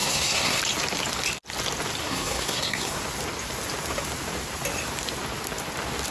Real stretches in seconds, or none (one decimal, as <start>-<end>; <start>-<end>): 0.6-2.0; 3.0-6.1